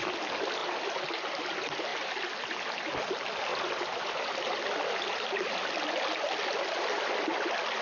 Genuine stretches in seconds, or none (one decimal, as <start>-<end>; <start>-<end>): 0.0-7.8